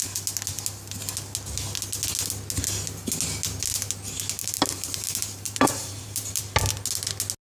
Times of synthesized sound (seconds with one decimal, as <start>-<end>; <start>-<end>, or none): 4.4-6.4